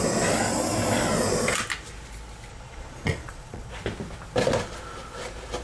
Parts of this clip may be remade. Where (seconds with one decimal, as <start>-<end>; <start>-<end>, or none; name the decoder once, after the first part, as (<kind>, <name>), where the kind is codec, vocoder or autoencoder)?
2.5-3.7 (vocoder, Vocos)